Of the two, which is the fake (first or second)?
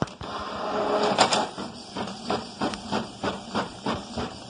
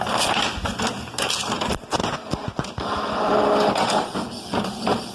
first